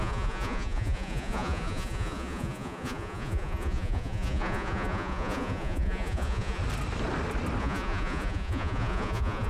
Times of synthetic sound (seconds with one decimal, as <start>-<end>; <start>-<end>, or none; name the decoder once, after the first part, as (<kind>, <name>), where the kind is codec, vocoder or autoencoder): 0.0-6.6 (vocoder, Vocos); 7.6-9.5